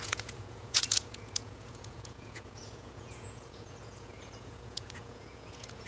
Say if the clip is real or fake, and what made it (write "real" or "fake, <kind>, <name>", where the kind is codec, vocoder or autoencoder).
fake, vocoder, Vocos